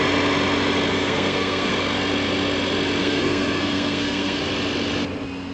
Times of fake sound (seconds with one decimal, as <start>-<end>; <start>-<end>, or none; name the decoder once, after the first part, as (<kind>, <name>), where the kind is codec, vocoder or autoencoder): 0.9-1.7 (codec, SNAC); 3.0-4.4